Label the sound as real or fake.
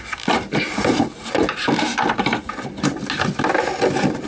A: real